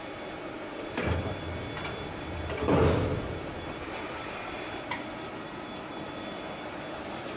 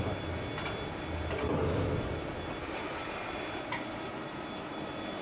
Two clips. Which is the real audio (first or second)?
second